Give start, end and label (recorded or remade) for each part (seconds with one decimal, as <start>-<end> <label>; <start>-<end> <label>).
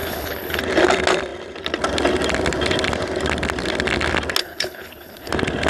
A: 0.0-0.6 remade; 0.6-4.4 recorded; 4.4-5.3 remade; 5.3-5.7 recorded